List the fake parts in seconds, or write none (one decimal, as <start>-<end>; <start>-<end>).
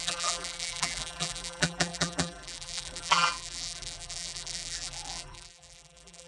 0.0-6.3